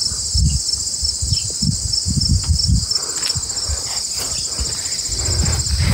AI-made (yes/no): no